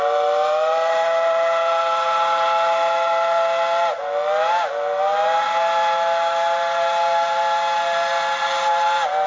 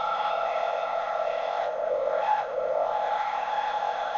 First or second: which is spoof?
second